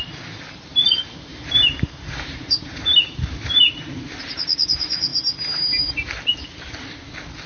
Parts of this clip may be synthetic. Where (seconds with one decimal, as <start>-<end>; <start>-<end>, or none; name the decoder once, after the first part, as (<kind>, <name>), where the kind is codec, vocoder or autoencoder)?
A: 1.3-3.6 (vocoder, BigVGAN v2); 5.1-6.2